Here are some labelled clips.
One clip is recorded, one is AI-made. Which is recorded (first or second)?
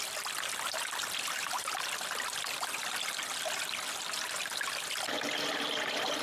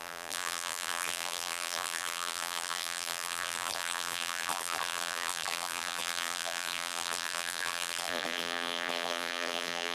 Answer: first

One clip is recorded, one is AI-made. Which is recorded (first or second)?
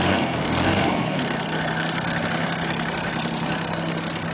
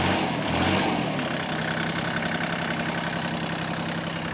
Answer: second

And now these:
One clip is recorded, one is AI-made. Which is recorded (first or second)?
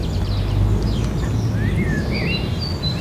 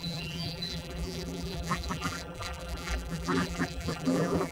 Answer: first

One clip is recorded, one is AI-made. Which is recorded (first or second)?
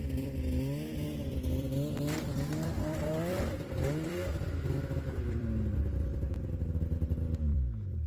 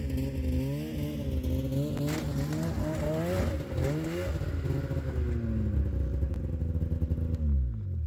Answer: second